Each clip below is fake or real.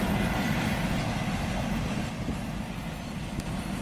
real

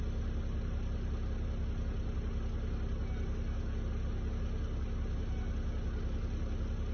real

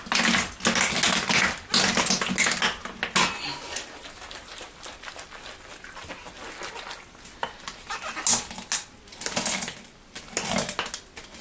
real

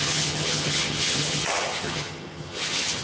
fake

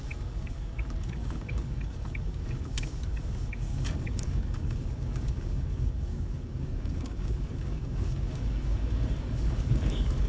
fake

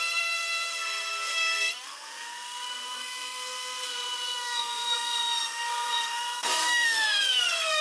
fake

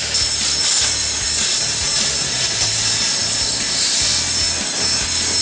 real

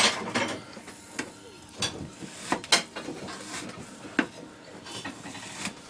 real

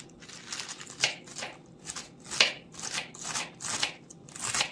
real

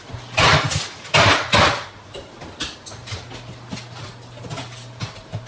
real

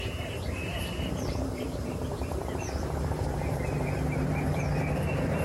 fake